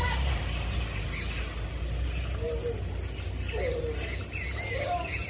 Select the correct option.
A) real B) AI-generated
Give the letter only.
A